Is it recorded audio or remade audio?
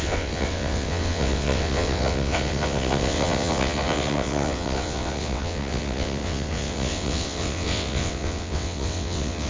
remade